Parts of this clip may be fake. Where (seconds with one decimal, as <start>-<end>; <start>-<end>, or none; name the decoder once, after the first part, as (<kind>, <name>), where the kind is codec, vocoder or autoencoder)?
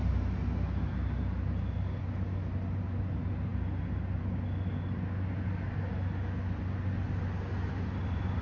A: none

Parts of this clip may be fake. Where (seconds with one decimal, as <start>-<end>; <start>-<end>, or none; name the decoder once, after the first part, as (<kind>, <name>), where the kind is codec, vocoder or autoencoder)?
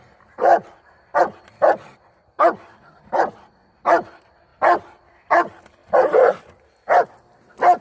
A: none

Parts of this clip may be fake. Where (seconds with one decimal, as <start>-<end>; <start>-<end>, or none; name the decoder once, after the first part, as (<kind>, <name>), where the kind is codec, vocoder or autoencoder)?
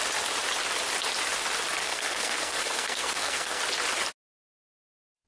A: 1.8-3.6 (codec, SNAC)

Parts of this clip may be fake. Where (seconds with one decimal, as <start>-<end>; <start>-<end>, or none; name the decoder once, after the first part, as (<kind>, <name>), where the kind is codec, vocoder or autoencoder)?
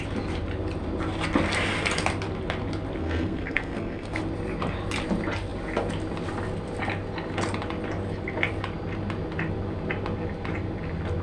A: 3.0-4.2 (codec, SNAC)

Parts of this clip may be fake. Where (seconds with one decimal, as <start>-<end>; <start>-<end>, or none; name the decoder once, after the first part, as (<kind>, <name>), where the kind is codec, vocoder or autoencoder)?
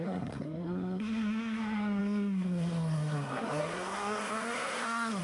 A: 0.0-5.2 (codec, SNAC)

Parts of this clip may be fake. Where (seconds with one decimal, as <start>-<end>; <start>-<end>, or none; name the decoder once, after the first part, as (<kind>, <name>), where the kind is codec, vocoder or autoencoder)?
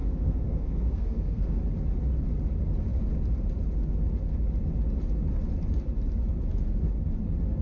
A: 0.0-1.6 (codec, SNAC)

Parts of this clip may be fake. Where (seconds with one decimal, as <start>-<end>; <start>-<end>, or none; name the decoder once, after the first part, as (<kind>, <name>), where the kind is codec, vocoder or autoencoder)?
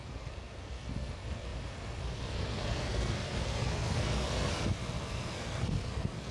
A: 0.0-6.3 (codec, SNAC)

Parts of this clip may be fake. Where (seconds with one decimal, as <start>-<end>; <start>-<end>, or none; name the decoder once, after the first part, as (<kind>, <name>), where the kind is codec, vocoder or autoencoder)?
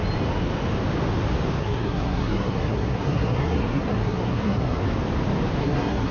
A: 1.6-4.8 (codec, SNAC); 5.6-6.1